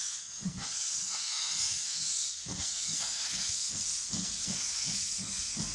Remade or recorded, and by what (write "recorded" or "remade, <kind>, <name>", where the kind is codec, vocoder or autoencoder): remade, codec, SNAC